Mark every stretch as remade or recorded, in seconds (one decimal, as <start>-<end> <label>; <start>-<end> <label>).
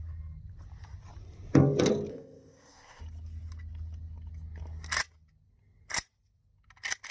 0.0-2.1 recorded; 2.1-3.0 remade; 3.0-7.1 recorded